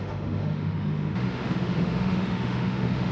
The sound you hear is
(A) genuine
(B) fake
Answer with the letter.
B